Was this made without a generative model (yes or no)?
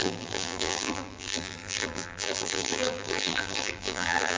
no